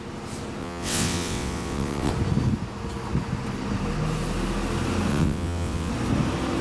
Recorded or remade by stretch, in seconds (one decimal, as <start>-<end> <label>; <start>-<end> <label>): 0.0-0.6 recorded; 0.6-2.1 remade; 2.1-5.1 recorded; 5.1-5.9 remade; 5.9-6.6 recorded